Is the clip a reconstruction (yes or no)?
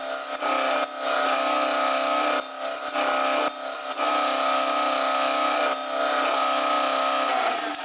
no